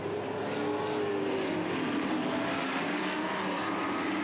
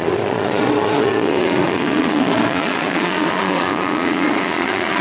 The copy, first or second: second